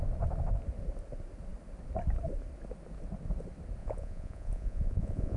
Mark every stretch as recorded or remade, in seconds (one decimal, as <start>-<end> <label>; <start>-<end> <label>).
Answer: 0.0-3.8 recorded; 3.8-5.4 remade